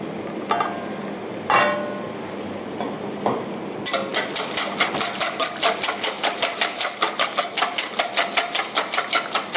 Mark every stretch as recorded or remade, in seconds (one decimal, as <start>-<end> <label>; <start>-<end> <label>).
0.0-9.6 recorded